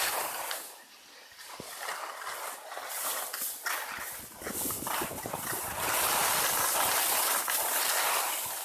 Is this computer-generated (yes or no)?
no